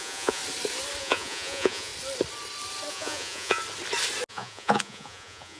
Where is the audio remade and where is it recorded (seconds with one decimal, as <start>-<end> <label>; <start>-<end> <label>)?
0.0-0.4 remade; 0.4-1.0 recorded; 1.0-1.9 remade; 1.9-2.9 recorded; 2.9-3.6 remade; 3.6-4.3 recorded; 4.3-5.6 remade